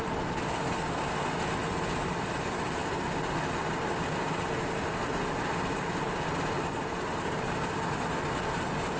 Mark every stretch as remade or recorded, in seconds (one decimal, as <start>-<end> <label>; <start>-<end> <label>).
0.0-9.0 recorded